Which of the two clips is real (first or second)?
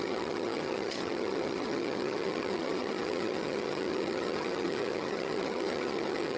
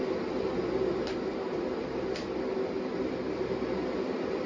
second